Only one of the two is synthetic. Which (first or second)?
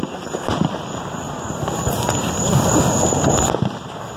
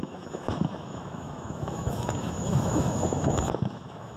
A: second